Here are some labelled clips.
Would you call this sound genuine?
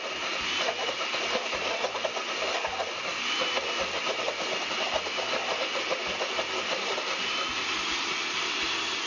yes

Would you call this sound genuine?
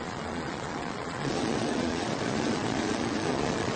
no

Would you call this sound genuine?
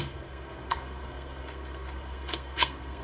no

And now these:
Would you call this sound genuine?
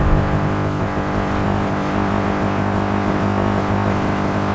no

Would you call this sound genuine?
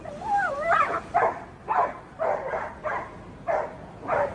yes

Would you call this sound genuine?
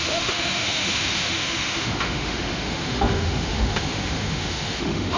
no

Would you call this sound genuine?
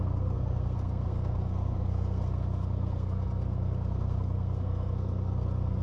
no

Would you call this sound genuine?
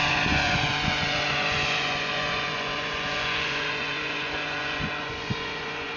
no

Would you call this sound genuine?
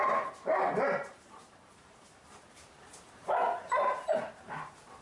no